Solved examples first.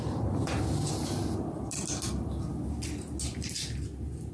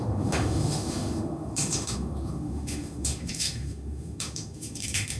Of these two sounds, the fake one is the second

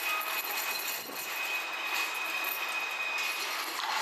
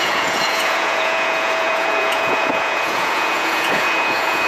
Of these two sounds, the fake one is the second